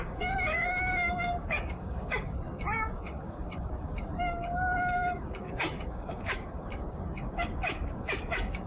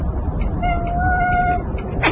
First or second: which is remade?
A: first